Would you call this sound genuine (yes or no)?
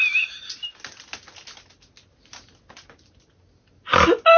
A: yes